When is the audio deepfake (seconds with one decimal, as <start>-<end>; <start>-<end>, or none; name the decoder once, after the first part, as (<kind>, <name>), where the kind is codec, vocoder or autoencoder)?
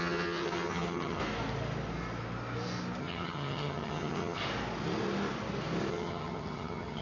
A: 0.0-1.2 (vocoder, HiFi-GAN); 3.0-4.4; 5.9-7.0